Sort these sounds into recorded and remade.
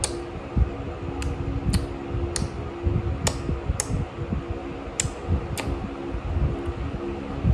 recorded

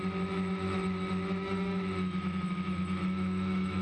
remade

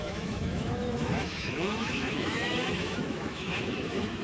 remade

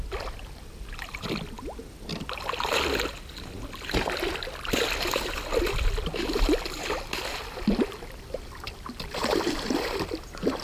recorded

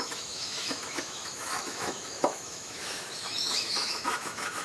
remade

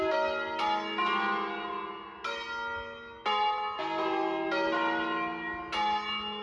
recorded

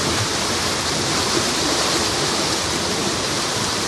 recorded